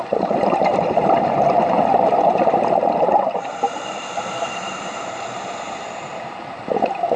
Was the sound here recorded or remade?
remade